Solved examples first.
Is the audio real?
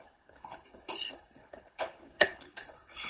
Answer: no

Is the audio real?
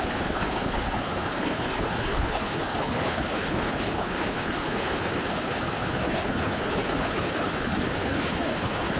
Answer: no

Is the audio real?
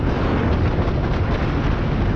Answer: yes